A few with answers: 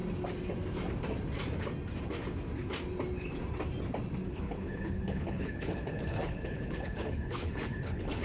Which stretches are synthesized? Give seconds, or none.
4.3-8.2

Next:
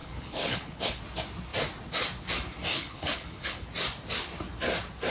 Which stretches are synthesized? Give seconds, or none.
0.0-1.0; 2.7-3.7

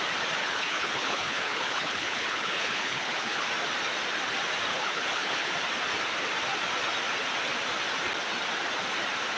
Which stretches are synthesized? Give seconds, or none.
0.4-3.5; 4.7-5.5

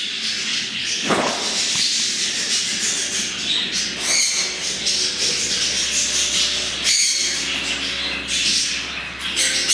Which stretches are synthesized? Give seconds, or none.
0.5-1.3

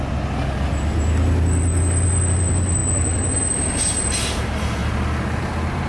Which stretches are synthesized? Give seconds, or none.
none